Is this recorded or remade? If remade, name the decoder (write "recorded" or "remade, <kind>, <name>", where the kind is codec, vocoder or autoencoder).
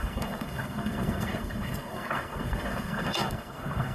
remade, codec, SNAC